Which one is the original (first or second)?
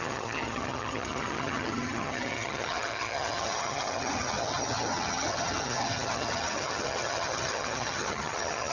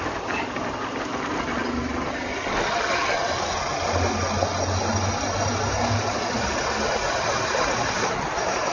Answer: second